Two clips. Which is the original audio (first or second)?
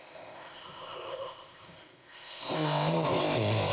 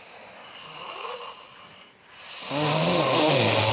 second